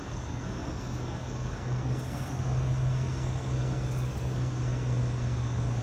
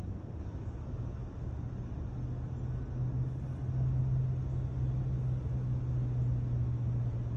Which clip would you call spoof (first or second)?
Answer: first